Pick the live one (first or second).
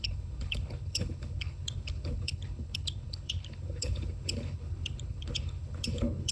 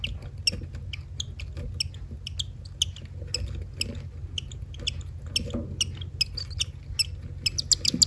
second